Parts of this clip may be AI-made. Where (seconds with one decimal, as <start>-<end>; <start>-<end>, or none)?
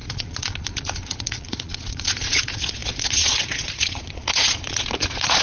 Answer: 0.0-5.4